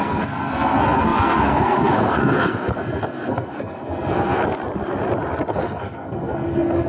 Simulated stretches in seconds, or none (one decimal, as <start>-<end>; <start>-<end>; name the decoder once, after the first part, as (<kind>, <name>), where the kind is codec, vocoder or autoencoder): 0.0-4.4 (codec, SNAC); 5.5-6.9